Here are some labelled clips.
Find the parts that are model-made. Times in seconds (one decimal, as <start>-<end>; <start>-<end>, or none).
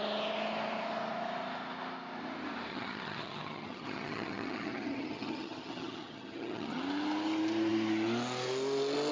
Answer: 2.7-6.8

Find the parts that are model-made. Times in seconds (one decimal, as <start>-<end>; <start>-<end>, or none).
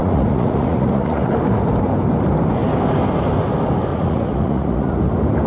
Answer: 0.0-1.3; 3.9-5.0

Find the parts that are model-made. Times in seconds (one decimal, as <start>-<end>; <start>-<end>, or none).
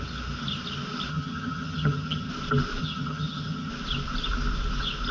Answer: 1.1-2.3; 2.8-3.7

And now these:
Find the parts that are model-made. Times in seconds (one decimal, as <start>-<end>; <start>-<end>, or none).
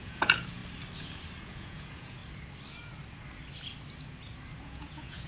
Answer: 0.0-0.6; 1.4-2.2; 4.6-5.3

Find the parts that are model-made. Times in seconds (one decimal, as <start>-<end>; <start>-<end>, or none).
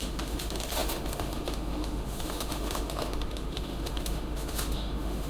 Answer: 0.0-5.3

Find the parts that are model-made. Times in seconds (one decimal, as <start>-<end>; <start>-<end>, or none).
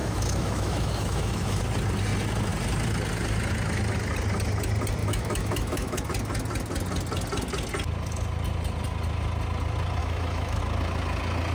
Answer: 0.0-1.6; 5.0-6.0; 10.0-10.6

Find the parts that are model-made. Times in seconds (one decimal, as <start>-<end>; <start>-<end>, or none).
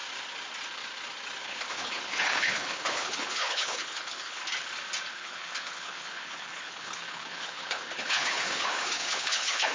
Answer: 1.4-4.4; 5.1-9.7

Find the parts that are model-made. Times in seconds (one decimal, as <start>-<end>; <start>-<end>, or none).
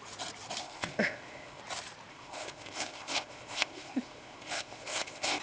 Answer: 0.6-1.6; 2.1-5.4